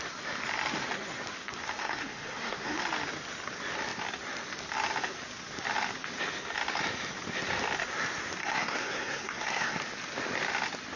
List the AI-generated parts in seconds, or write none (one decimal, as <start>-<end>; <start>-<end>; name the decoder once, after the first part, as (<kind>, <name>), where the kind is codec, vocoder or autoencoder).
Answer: 1.8-2.8 (codec, SNAC); 8.4-9.8